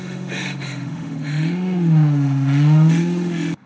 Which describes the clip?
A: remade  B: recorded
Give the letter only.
A